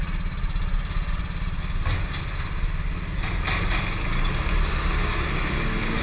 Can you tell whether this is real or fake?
real